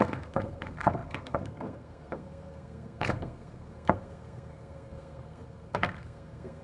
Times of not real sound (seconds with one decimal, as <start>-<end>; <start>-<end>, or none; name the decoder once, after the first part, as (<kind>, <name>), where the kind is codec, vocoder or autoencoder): 0.0-6.6 (codec, SNAC)